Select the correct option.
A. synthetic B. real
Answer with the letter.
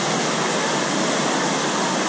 B